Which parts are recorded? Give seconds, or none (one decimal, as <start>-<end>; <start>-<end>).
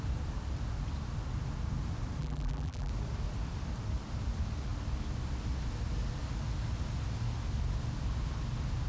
0.0-2.2; 2.9-8.9